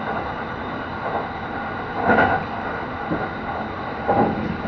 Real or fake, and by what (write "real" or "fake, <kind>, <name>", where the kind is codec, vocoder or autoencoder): real